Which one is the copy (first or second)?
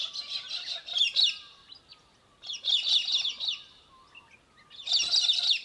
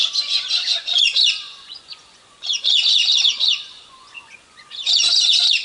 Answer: second